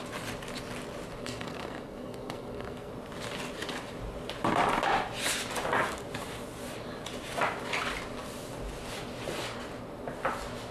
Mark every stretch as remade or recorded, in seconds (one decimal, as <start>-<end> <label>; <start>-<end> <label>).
0.0-1.2 recorded; 1.2-2.9 remade; 2.9-10.7 recorded